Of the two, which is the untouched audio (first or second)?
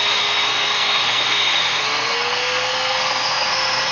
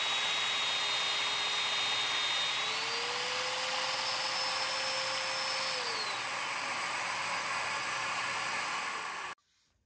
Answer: second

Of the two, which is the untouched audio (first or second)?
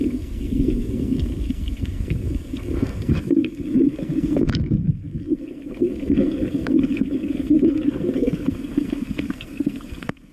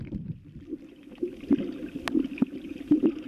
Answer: second